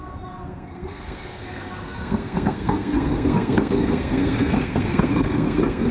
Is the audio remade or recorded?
remade